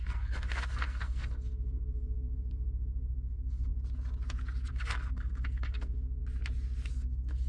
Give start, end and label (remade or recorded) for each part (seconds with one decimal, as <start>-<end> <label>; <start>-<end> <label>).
0.0-3.7 remade; 3.7-4.7 recorded; 4.7-6.2 remade; 6.2-6.9 recorded; 6.9-7.5 remade